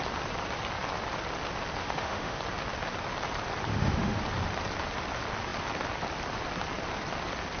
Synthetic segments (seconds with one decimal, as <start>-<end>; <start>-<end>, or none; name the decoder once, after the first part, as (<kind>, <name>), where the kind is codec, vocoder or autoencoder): 1.8-2.4 (autoencoder, DAC-VAE); 3.7-4.2